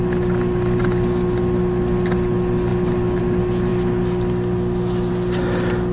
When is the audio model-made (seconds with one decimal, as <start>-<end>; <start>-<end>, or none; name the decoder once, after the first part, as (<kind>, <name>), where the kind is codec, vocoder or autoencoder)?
none

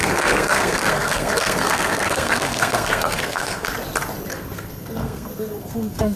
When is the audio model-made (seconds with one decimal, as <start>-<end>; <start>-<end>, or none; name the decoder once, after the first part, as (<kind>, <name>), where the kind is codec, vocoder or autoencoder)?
0.0-3.7 (codec, SNAC); 4.3-6.2

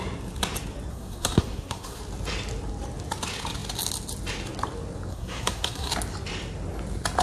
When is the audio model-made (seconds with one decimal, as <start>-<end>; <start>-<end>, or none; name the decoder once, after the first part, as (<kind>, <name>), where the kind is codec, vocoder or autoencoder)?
0.9-2.0 (codec, SNAC); 5.1-5.9

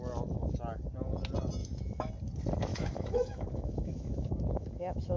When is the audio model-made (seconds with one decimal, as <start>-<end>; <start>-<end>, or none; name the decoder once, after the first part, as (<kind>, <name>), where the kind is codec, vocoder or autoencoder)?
1.6-2.1 (autoencoder, DAC-VAE); 2.7-5.2

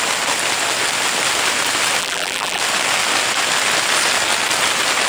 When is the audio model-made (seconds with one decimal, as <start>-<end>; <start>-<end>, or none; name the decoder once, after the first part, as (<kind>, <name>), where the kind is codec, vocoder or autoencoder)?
2.0-2.6 (vocoder, BigVGAN v2)

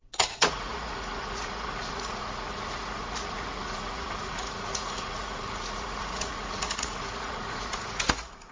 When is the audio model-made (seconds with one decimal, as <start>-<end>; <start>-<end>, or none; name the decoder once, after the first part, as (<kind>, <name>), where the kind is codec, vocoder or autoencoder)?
0.0-8.5 (vocoder, Vocos)

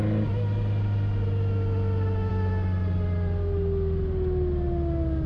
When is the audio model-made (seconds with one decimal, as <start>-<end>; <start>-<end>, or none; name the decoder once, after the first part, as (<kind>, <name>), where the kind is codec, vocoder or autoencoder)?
none